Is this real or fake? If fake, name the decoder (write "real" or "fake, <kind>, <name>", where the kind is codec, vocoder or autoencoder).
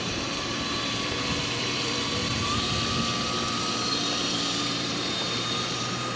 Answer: fake, vocoder, BigVGAN v2